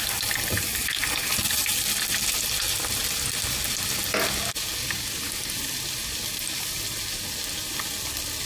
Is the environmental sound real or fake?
real